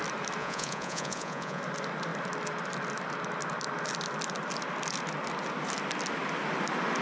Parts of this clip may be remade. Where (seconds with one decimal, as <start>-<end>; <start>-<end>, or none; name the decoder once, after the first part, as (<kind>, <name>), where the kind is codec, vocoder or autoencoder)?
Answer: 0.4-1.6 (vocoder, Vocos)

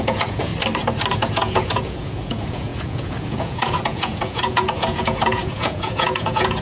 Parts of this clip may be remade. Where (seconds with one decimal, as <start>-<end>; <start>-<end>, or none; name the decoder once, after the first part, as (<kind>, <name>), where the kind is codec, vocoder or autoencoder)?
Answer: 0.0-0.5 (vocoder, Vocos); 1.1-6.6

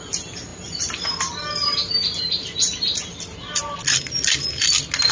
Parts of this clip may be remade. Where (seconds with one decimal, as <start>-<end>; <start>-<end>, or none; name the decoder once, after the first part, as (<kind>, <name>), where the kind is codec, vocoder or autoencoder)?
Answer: none

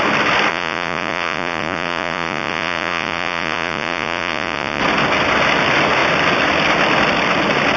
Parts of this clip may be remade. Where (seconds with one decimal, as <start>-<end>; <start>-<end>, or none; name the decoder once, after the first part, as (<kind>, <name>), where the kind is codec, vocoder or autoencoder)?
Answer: 0.5-4.8 (vocoder, Vocos)

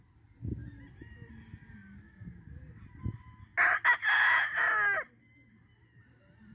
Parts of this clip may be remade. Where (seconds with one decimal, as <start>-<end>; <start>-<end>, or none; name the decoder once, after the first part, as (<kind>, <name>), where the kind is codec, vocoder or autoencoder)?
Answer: none

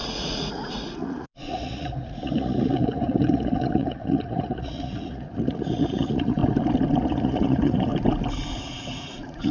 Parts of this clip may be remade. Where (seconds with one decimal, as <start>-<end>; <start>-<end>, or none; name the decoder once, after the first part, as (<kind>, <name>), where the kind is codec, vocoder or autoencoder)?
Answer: 0.0-6.4 (vocoder, Vocos); 7.0-7.9; 8.5-9.5

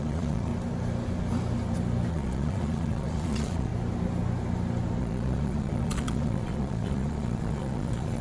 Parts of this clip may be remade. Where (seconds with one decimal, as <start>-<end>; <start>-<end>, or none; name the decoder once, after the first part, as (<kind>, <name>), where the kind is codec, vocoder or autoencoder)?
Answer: 0.0-0.5 (vocoder, Vocos); 2.1-3.7; 5.0-8.2